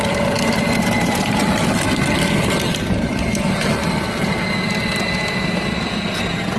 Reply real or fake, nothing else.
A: fake